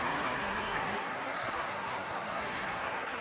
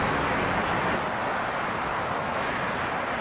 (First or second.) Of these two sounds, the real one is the second